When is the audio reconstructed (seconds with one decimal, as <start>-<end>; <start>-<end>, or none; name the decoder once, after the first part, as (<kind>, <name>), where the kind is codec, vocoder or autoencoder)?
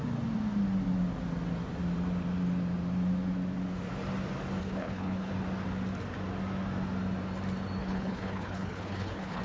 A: 4.6-5.3 (codec, HILCodec); 7.8-9.4